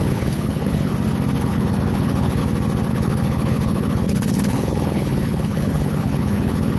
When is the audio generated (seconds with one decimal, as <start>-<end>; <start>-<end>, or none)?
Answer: 0.0-0.9; 1.4-2.4; 2.9-6.8